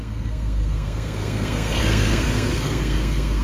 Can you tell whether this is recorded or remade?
remade